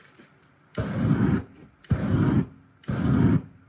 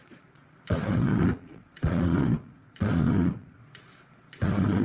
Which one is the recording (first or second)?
first